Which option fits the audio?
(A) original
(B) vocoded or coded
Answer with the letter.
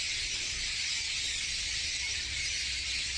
A